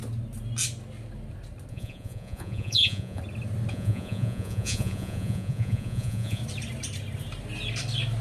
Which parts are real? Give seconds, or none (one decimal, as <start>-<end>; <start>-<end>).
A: 0.0-1.7; 3.2-3.7; 6.4-8.2